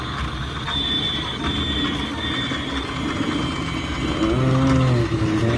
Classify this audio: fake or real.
real